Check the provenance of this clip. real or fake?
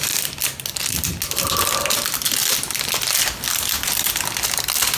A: real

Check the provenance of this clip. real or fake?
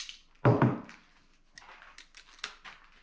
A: real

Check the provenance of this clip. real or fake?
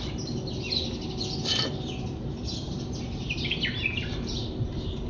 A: real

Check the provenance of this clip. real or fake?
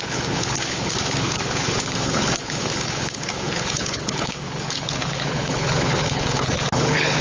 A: fake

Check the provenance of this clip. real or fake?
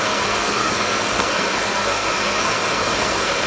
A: fake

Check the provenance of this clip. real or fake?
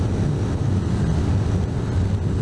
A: real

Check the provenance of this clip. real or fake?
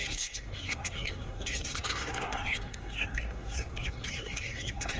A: fake